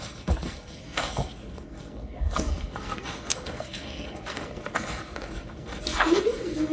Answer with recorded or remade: remade